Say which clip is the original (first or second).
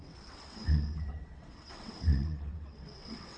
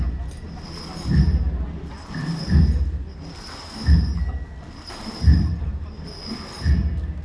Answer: second